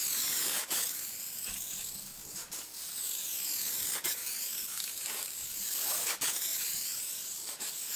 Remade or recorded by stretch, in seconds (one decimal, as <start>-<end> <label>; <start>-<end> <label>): 0.0-8.0 remade